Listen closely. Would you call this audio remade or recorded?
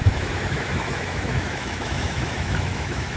remade